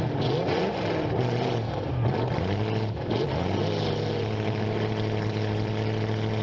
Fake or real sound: real